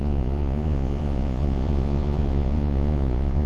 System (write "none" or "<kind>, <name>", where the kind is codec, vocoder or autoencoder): vocoder, Vocos